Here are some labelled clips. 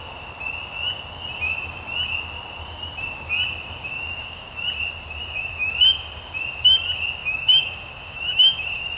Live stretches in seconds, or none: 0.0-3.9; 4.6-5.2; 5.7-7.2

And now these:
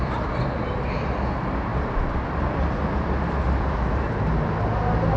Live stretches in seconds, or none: 0.0-5.2